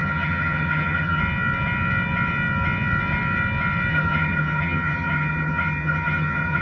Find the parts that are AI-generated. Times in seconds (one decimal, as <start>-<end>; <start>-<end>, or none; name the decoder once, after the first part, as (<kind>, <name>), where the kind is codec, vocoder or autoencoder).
0.0-1.2 (vocoder, HiFi-GAN); 3.9-6.6